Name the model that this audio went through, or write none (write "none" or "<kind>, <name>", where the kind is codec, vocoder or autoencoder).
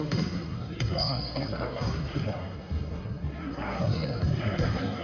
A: codec, SNAC